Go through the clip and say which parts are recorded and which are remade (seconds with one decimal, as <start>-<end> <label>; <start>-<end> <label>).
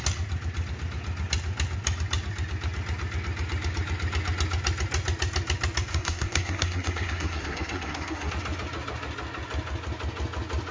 0.0-5.9 recorded; 5.9-8.3 remade; 8.3-10.7 recorded